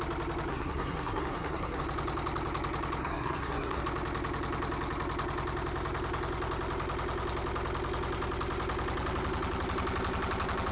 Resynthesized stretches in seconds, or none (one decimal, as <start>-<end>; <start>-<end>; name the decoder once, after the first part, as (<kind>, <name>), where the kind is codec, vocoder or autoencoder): 0.5-1.8 (codec, SNAC); 3.0-3.8